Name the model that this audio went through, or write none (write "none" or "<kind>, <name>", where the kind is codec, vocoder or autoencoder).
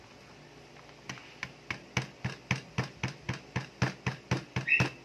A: none